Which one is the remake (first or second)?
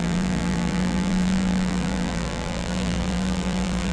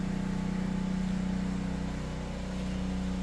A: first